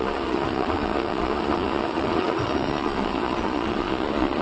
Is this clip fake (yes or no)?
yes